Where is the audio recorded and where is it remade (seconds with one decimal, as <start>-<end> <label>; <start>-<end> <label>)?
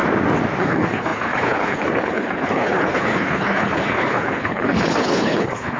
0.0-0.6 recorded; 0.6-5.8 remade